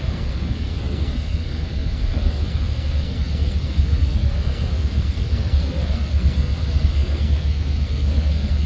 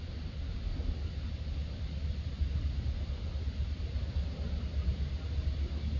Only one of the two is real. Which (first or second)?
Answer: second